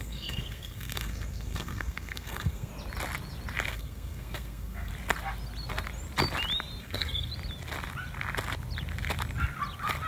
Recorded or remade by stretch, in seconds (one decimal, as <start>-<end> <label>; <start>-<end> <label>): 0.0-2.7 remade; 2.7-3.7 recorded; 3.7-4.9 remade; 4.9-6.8 recorded; 6.8-7.3 remade; 7.3-10.1 recorded